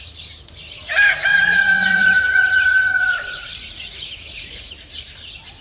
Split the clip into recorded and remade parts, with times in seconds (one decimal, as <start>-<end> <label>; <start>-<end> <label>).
0.0-1.3 recorded; 1.3-4.7 remade; 4.7-5.6 recorded